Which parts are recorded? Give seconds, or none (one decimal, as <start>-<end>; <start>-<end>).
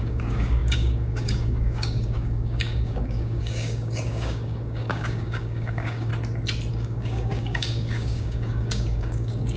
6.1-6.7